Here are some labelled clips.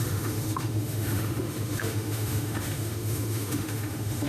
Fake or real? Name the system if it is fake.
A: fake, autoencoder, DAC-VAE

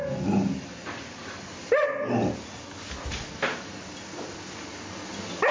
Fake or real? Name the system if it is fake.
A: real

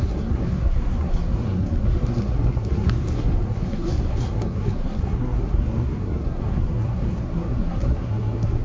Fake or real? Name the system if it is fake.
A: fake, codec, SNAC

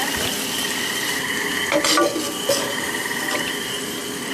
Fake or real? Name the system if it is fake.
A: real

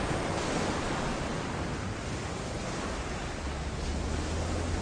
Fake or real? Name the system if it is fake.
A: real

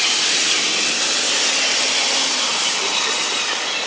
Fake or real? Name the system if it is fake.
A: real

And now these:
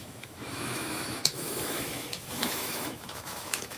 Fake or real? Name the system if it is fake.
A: fake, autoencoder, DAC-VAE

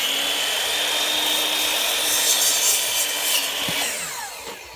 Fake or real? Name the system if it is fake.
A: real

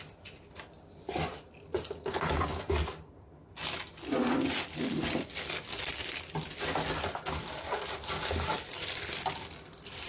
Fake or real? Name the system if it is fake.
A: real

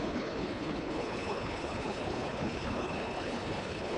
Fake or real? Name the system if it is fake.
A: fake, codec, HILCodec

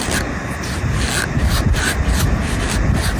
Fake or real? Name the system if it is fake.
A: real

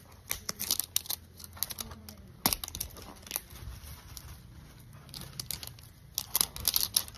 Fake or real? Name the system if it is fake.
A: real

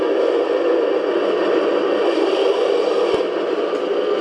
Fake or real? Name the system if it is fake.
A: real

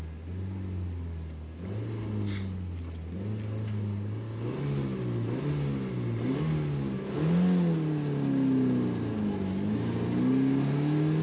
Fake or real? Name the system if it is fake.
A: real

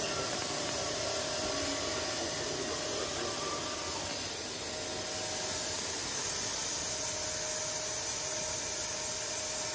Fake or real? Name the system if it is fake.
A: real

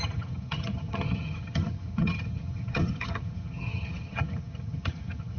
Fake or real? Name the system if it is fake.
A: fake, vocoder, HiFi-GAN